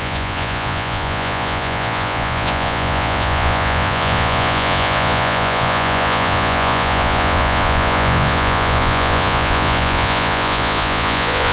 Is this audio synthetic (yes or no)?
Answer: yes